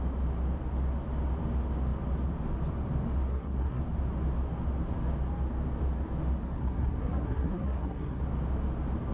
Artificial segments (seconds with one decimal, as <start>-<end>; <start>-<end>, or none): 3.3-3.8; 6.6-8.2